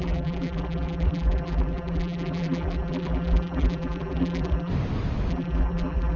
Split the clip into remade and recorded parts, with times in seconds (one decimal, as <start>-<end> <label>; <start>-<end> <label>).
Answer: 0.0-4.7 remade; 4.7-5.3 recorded; 5.3-6.2 remade